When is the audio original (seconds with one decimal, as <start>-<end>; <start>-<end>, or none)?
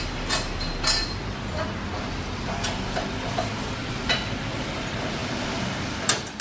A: 0.0-6.4